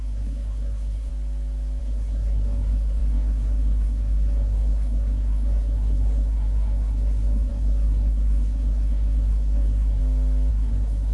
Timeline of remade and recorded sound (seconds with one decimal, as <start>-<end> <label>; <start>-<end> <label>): 0.0-1.1 remade; 1.1-1.8 recorded; 1.8-10.0 remade; 10.0-10.5 recorded; 10.5-11.1 remade